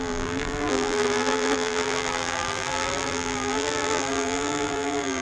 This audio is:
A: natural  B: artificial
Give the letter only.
B